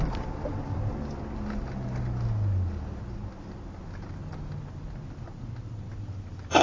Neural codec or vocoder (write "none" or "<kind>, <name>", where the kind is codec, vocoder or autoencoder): none